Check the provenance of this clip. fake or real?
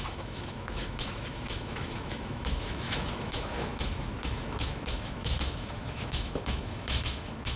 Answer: fake